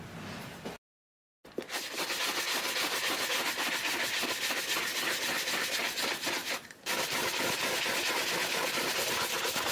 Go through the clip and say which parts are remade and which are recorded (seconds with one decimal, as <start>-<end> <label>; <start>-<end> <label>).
0.0-1.2 recorded; 1.2-2.3 remade; 2.3-9.7 recorded

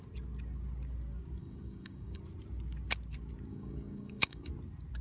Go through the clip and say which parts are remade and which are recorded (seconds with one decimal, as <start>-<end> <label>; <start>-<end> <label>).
0.0-1.4 recorded; 1.4-2.2 remade; 2.2-3.5 recorded; 3.5-4.5 remade; 4.5-5.0 recorded

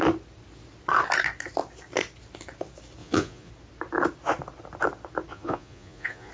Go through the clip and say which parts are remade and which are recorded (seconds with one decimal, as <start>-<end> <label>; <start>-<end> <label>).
0.0-3.0 recorded; 3.0-3.5 remade; 3.5-5.3 recorded; 5.3-6.3 remade

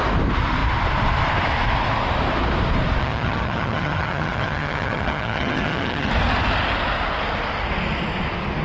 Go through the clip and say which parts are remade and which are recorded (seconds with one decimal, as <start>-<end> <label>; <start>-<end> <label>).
0.0-3.0 recorded; 3.0-6.1 remade; 6.1-8.6 recorded

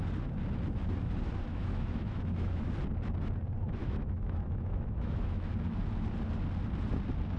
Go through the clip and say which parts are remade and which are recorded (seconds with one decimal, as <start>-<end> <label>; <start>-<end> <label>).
0.0-1.5 recorded; 1.5-2.7 remade; 2.7-3.8 recorded; 3.8-5.5 remade; 5.5-7.4 recorded